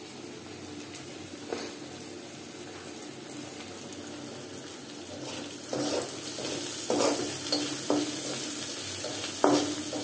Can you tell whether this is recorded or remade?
recorded